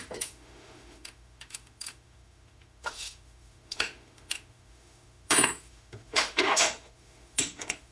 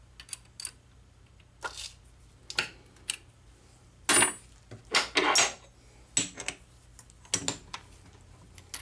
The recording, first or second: second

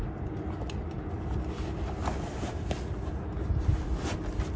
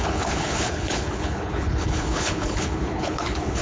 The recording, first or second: first